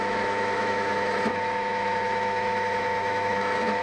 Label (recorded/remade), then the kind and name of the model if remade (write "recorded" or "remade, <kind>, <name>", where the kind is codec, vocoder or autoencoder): remade, autoencoder, DAC-VAE